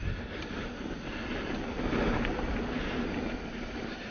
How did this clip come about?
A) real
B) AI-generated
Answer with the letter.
A